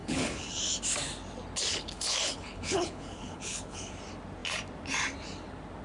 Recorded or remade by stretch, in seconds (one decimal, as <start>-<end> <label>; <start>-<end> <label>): 0.0-0.6 remade; 0.6-1.7 recorded; 1.7-3.9 remade; 3.9-5.8 recorded